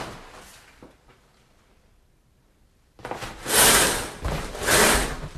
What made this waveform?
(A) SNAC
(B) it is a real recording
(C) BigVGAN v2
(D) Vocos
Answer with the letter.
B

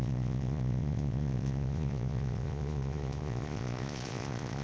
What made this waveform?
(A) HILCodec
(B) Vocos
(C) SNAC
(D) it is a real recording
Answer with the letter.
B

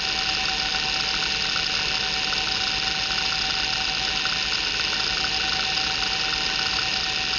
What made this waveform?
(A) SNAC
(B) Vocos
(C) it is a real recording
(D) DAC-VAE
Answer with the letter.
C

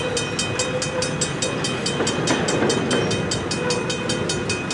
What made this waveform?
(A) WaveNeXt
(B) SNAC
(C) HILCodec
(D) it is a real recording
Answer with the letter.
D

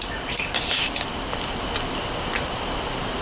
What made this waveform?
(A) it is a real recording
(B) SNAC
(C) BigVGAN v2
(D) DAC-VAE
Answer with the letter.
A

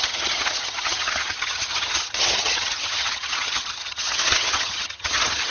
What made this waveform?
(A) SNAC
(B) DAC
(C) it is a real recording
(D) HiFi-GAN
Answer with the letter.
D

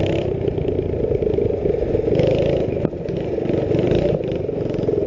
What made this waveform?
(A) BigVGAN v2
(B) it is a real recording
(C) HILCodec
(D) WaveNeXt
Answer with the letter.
B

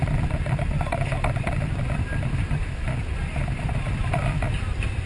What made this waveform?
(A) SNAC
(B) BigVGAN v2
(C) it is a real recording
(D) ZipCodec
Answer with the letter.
C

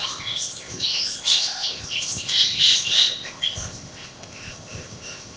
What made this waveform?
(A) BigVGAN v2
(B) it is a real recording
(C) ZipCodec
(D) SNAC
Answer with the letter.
C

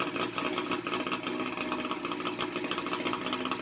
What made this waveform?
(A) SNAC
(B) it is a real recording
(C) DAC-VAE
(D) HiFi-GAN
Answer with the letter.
B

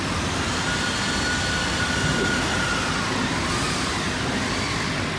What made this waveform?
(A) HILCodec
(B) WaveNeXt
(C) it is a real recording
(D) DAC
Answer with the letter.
C